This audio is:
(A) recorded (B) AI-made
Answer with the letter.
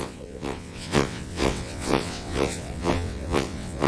B